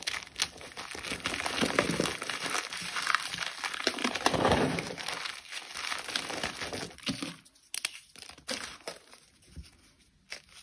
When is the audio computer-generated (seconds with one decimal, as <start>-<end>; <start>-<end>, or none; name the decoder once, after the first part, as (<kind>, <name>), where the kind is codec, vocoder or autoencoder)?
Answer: 4.0-5.1 (vocoder, BigVGAN v2)

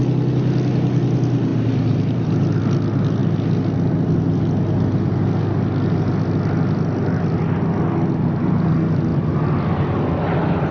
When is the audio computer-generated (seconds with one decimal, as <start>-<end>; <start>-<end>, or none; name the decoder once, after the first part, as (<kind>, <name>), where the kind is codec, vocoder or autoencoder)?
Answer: 1.5-2.6 (vocoder, BigVGAN v2)

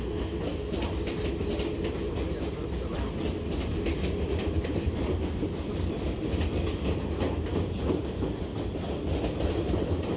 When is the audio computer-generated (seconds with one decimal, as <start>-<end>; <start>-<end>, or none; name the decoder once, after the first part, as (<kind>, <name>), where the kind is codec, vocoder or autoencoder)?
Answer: 2.9-6.2 (vocoder, BigVGAN v2)

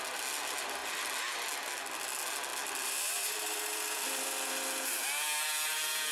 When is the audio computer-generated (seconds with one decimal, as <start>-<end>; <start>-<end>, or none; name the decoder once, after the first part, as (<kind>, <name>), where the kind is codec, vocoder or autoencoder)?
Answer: 2.5-4.5 (vocoder, BigVGAN v2)